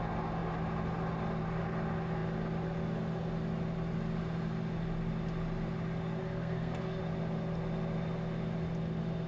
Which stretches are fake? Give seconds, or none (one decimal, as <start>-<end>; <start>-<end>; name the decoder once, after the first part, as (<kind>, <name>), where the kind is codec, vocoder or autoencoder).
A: 6.2-7.0 (codec, SNAC)